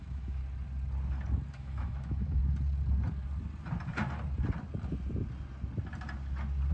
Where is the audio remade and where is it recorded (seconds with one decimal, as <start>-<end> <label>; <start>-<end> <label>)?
0.0-0.4 remade; 0.4-1.5 recorded; 1.5-2.4 remade; 2.4-6.7 recorded